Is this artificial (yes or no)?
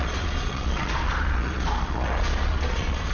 yes